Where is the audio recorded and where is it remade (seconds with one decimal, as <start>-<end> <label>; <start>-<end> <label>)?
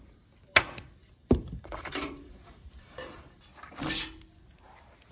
0.0-1.0 recorded; 1.0-3.4 remade; 3.4-5.1 recorded